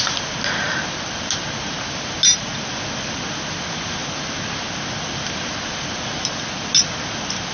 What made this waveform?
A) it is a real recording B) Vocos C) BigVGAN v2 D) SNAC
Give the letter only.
A